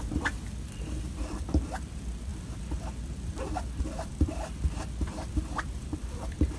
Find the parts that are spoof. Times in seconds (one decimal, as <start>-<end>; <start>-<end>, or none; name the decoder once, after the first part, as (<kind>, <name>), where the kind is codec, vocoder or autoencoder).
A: 0.0-6.6 (vocoder, BigVGAN v2)